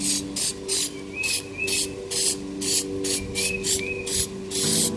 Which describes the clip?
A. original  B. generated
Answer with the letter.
A